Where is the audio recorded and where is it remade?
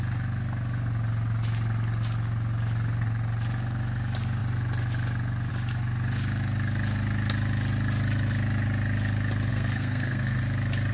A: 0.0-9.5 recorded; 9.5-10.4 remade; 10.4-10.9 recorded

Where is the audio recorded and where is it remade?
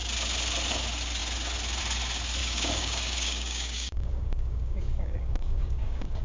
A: 0.0-2.4 recorded; 2.4-6.2 remade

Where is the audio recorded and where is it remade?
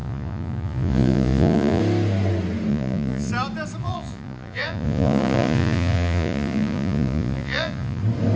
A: 0.0-1.8 remade; 1.8-2.7 recorded; 2.7-3.3 remade; 3.3-3.8 recorded; 3.8-8.0 remade; 8.0-8.4 recorded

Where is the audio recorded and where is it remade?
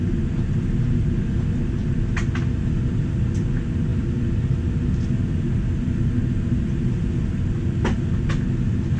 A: 0.0-9.0 recorded